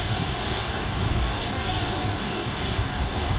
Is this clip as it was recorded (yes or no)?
no